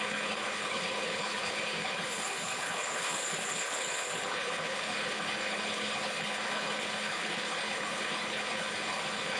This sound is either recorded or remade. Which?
remade